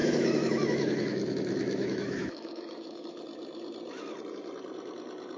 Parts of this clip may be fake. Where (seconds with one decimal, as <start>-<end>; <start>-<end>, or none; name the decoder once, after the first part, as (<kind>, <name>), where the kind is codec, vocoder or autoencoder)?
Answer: 0.0-3.2 (autoencoder, DAC-VAE)